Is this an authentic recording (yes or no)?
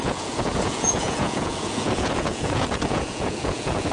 no